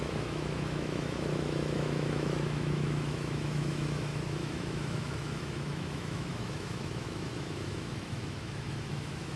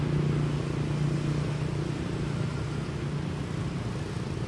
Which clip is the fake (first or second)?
first